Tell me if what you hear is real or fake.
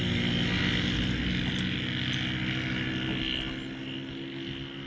real